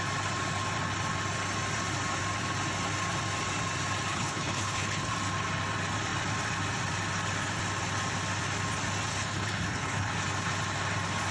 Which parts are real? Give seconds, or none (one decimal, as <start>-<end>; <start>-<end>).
0.0-4.1; 5.1-9.1; 10.1-11.3